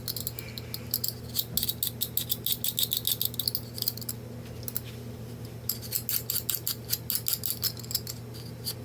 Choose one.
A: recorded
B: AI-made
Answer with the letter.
A